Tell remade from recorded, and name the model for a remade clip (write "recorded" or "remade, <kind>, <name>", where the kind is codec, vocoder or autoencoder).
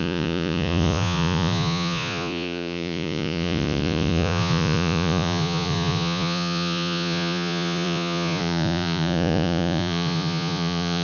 remade, vocoder, Vocos